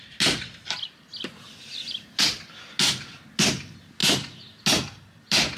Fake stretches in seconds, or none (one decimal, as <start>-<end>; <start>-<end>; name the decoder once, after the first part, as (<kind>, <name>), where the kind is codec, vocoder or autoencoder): none